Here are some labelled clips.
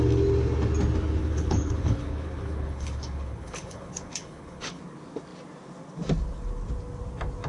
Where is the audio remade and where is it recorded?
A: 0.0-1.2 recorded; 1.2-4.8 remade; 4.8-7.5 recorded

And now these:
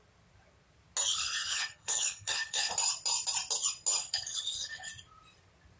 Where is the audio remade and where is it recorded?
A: 0.0-1.1 recorded; 1.1-2.7 remade; 2.7-4.0 recorded; 4.0-4.9 remade; 4.9-5.8 recorded